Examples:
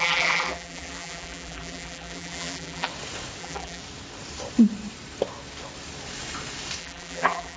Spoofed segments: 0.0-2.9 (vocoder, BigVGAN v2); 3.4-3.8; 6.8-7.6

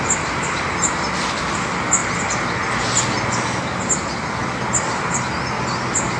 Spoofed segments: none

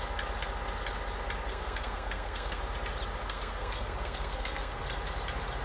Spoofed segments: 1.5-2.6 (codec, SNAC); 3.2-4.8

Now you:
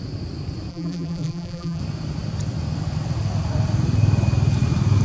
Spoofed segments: 0.7-1.8 (vocoder, BigVGAN v2)

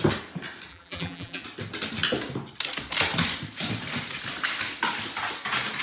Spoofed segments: 0.7-1.4 (vocoder, BigVGAN v2)

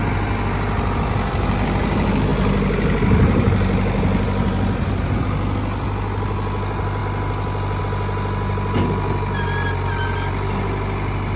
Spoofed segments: none